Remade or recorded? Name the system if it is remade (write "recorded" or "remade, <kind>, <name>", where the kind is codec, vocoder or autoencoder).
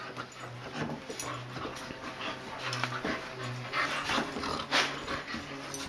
recorded